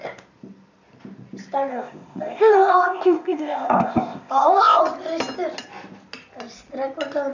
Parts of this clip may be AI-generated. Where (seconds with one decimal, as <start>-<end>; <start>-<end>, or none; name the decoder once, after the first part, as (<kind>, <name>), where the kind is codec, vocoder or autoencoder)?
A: 1.7-4.8 (codec, ZipCodec)